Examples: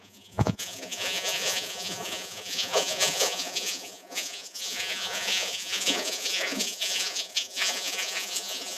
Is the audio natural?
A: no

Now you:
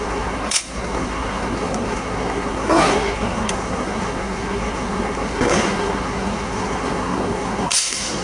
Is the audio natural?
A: no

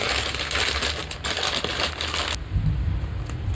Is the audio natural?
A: yes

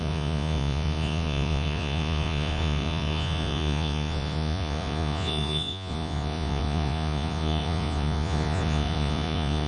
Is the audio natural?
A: no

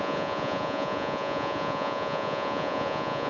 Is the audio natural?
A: no